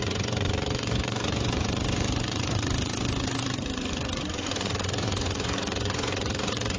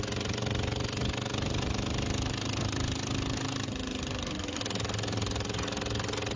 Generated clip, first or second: first